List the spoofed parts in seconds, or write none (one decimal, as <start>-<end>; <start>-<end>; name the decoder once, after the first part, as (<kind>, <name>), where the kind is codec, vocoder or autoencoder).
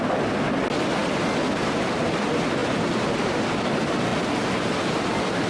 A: 2.6-3.2 (vocoder, BigVGAN v2)